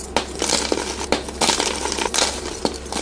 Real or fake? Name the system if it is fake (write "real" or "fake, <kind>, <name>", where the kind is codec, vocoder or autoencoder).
real